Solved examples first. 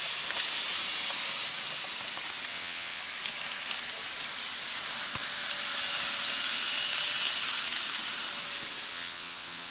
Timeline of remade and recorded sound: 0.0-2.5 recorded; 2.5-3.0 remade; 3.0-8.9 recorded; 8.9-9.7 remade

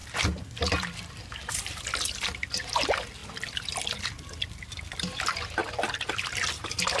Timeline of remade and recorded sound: 0.0-7.0 recorded

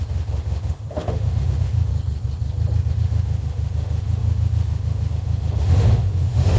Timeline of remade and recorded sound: 0.0-1.9 remade; 1.9-2.9 recorded; 2.9-6.6 remade

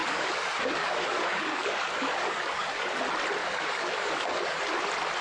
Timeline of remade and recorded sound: 0.0-3.0 remade; 3.0-3.4 recorded; 3.4-4.6 remade; 4.6-5.2 recorded

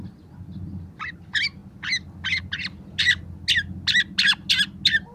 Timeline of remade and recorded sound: 0.0-5.1 recorded